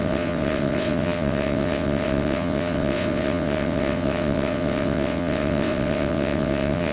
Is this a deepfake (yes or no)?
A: yes